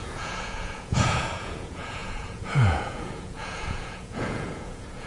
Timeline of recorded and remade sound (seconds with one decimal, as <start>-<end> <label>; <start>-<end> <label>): 0.0-5.1 remade